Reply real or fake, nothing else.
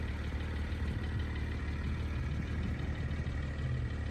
real